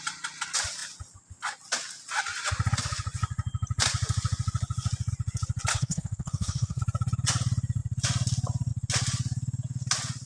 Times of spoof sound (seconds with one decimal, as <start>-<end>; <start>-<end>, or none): 5.7-6.8